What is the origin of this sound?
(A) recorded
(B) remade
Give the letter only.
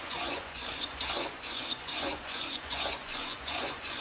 B